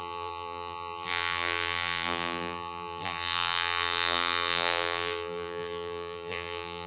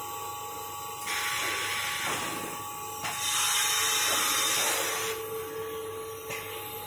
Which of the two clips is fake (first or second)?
first